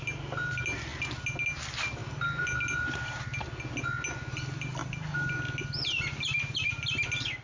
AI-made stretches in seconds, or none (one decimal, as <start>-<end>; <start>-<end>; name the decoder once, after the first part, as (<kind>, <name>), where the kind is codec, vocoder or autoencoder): none